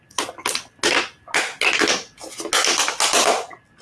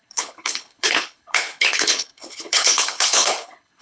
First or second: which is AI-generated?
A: second